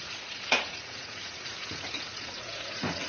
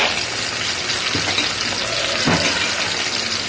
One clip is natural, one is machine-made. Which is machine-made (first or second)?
first